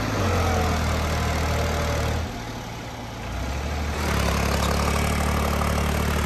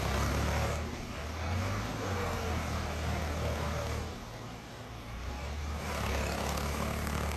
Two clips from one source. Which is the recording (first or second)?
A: first